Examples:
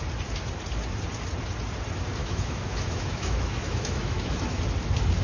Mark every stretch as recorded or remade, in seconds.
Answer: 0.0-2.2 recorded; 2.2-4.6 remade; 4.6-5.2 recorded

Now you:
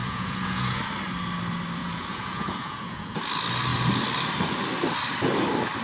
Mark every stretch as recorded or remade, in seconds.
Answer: 0.0-0.8 remade; 0.8-1.8 recorded; 1.8-3.2 remade; 3.2-5.8 recorded

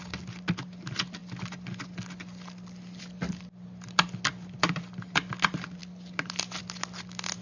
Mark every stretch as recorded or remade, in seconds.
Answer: 0.0-7.4 recorded

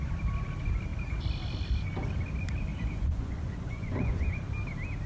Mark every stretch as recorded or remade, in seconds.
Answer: 0.0-2.7 recorded; 2.7-4.3 remade; 4.3-5.1 recorded

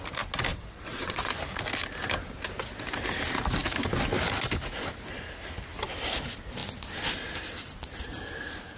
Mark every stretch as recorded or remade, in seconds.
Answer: 0.0-0.5 recorded; 0.5-1.3 remade; 1.3-8.8 recorded

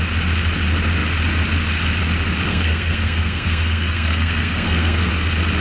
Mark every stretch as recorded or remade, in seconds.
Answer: 0.0-2.5 recorded; 2.5-5.1 remade; 5.1-5.6 recorded

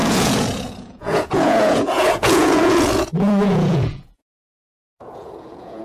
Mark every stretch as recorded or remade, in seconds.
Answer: 0.0-5.8 remade